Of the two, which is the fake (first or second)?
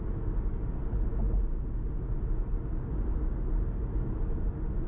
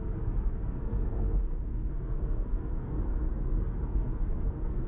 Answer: second